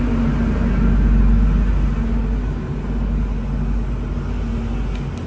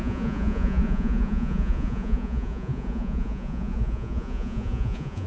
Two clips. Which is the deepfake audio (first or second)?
second